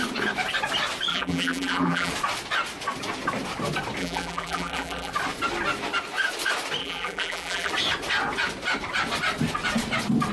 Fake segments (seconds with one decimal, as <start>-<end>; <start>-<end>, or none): 1.1-2.1; 4.0-5.1; 6.8-7.7